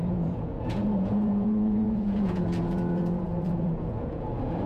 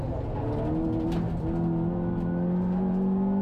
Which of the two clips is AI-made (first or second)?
first